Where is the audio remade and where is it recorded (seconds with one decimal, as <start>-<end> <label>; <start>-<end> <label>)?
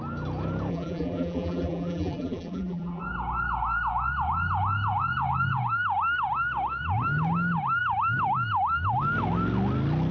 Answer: 0.0-0.7 recorded; 0.7-3.0 remade; 3.0-10.1 recorded